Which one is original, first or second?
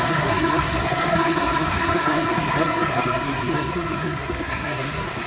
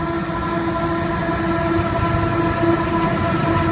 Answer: second